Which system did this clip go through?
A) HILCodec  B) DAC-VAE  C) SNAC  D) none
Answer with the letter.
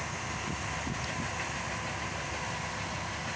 D